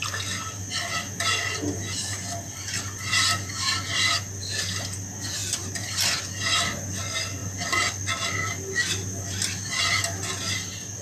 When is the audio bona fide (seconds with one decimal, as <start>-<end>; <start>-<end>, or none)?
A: 0.0-11.0